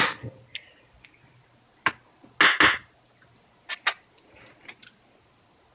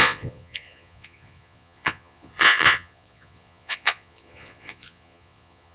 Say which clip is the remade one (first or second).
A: second